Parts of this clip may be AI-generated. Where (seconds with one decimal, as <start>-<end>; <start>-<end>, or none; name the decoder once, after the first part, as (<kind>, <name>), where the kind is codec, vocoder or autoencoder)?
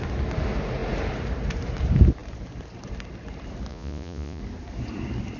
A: 3.7-4.4 (vocoder, Vocos)